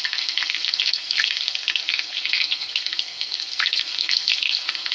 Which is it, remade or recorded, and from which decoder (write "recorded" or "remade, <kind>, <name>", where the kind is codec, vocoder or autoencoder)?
remade, codec, SNAC